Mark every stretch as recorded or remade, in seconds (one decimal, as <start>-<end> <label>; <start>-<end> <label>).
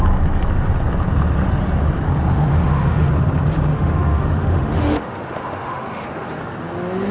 0.0-2.3 recorded; 2.3-3.1 remade; 3.1-3.7 recorded; 3.7-6.4 remade; 6.4-7.1 recorded